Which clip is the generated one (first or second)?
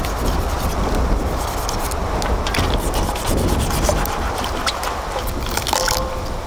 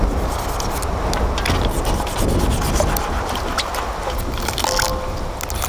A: first